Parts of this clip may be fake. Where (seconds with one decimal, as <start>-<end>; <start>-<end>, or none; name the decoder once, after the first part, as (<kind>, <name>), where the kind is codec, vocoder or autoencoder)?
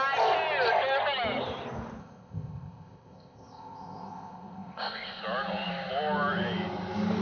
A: 2.0-5.2 (codec, ZipCodec)